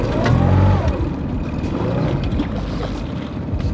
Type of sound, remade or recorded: recorded